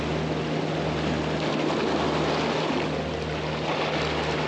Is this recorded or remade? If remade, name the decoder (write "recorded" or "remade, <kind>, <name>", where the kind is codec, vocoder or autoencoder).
recorded